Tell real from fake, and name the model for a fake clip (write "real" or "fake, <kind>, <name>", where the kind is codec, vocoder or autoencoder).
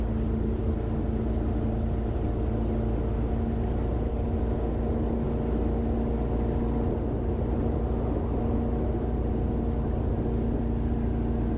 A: real